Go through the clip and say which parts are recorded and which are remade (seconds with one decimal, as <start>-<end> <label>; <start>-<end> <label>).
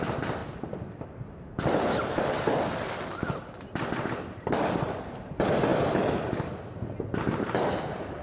0.0-0.4 recorded; 0.4-5.3 remade; 5.3-5.7 recorded; 5.7-6.3 remade; 6.3-8.2 recorded